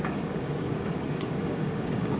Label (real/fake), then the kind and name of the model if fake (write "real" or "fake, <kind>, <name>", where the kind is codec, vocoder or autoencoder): fake, codec, DAC